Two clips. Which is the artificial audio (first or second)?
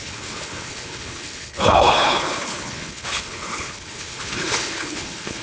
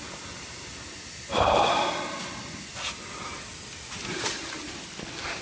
first